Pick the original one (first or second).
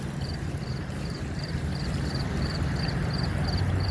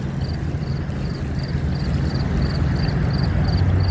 second